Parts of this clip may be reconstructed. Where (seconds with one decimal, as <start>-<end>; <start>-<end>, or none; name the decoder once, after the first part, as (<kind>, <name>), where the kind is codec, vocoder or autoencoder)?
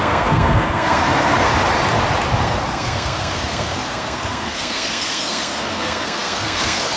0.0-1.5 (codec, SNAC); 2.4-7.0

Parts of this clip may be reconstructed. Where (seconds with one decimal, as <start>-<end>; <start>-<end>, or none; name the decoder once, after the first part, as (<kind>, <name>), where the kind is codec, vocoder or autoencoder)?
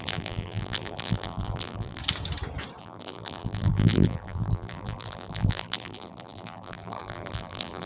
0.0-2.0 (vocoder, BigVGAN v2); 2.8-7.9